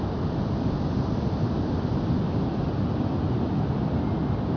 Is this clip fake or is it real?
real